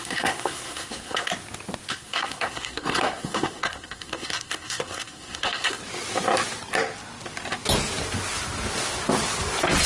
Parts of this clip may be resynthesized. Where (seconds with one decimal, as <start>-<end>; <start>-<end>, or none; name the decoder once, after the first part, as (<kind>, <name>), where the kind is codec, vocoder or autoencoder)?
0.0-1.3 (codec, SNAC); 1.9-5.8